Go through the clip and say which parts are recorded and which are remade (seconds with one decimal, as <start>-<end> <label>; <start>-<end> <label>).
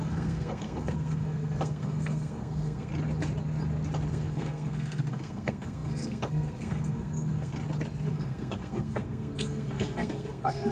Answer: 0.0-2.9 remade; 2.9-4.1 recorded; 4.1-7.5 remade; 7.5-8.1 recorded; 8.1-10.7 remade